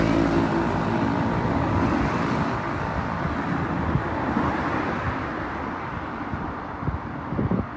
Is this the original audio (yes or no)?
no